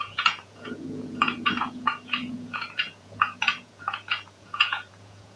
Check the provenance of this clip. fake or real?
fake